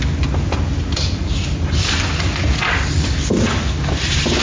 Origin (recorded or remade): recorded